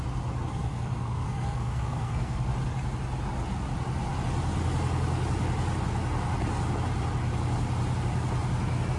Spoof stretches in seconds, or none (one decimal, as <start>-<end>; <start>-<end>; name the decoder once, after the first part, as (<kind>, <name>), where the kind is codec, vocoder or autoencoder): 0.5-2.5 (codec, SNAC)